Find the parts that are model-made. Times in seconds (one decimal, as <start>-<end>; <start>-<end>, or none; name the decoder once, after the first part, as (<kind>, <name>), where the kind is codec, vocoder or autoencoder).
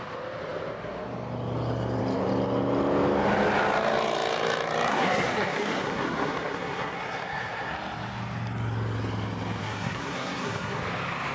4.9-7.7 (codec, SNAC); 9.6-10.8